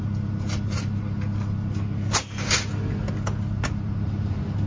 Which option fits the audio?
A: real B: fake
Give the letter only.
A